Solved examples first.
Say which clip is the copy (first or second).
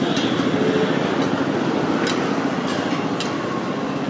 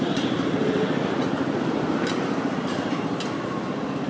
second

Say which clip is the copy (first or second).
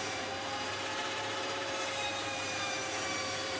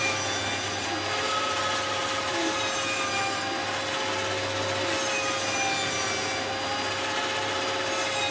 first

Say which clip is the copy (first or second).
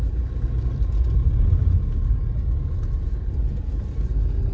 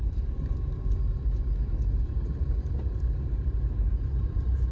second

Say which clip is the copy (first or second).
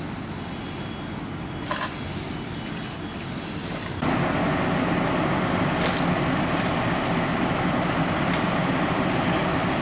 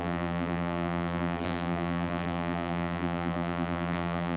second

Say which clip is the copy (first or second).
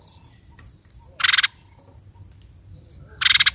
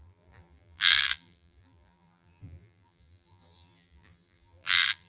second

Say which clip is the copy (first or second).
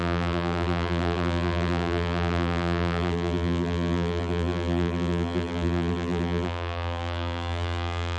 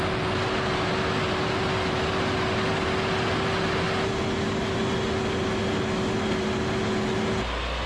first